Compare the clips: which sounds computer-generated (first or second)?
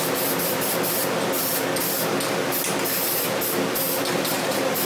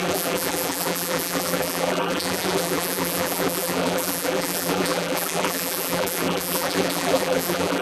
second